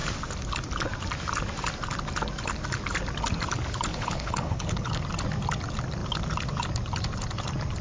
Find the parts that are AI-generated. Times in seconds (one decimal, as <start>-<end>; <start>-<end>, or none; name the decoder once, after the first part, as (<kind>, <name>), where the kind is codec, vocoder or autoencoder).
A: 3.9-5.0 (codec, HILCodec)